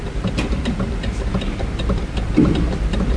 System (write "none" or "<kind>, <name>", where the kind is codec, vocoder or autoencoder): none